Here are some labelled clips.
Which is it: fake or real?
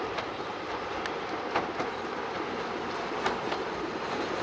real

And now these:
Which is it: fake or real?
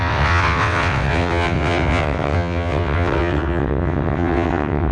fake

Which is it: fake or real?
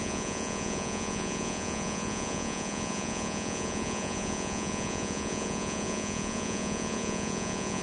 fake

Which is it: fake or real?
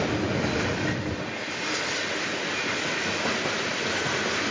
real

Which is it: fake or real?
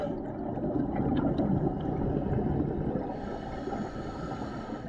real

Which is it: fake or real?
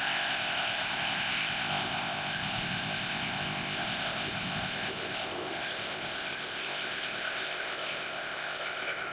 fake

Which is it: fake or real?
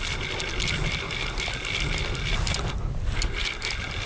real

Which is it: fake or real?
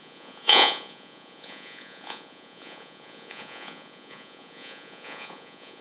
fake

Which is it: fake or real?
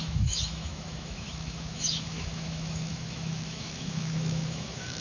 fake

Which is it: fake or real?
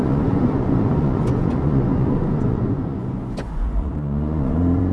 fake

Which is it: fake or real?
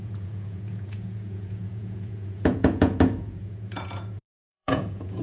fake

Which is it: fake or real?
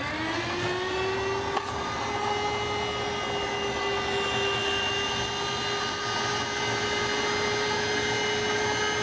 real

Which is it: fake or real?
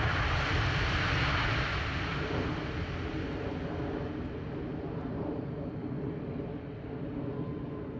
real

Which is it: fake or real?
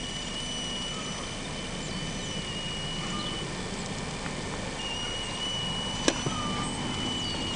real